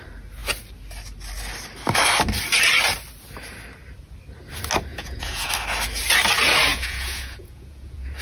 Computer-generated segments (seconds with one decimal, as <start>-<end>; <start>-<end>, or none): 4.9-5.5; 6.7-8.2